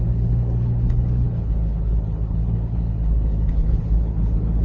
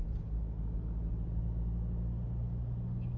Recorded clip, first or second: second